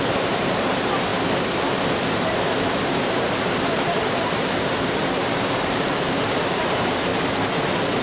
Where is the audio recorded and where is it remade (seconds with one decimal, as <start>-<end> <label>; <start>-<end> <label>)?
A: 0.0-1.1 remade; 1.1-3.0 recorded; 3.0-7.1 remade; 7.1-8.0 recorded